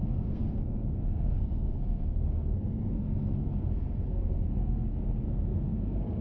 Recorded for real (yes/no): no